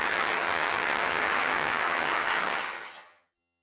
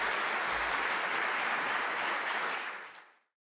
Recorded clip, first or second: second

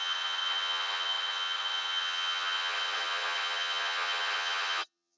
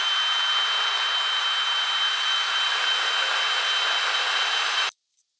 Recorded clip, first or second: second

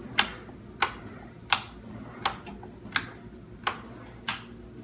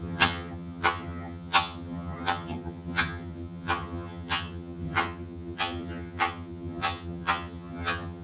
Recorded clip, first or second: first